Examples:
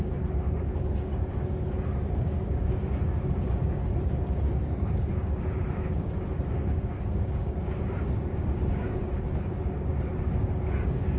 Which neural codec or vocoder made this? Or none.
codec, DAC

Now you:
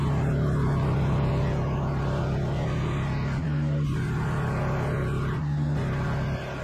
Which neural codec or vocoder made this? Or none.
none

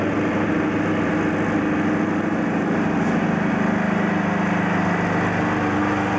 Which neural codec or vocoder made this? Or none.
none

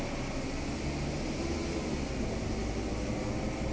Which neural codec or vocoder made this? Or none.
none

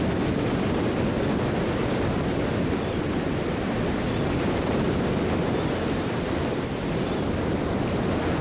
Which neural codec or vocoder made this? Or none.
none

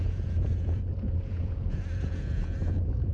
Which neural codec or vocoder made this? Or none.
vocoder, Vocos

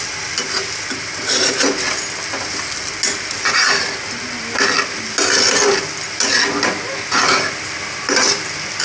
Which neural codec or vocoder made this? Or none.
none